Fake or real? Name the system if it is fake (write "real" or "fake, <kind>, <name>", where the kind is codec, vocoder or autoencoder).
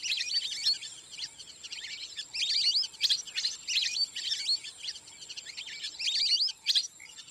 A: real